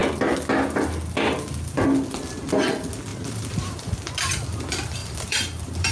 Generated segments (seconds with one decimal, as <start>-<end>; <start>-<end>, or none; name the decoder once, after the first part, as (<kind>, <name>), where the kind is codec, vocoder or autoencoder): 3.1-4.1 (vocoder, BigVGAN v2); 5.0-5.9